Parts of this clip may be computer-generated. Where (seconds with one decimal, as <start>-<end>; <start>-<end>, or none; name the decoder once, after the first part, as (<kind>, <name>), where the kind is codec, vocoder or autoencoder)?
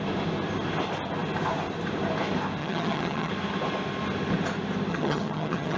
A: 2.6-3.3 (vocoder, HiFi-GAN); 4.9-5.8